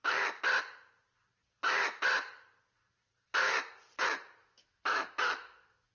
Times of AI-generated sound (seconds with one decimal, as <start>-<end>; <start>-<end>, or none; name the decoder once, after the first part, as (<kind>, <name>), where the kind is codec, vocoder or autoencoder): 4.4-5.9 (autoencoder, DAC-VAE)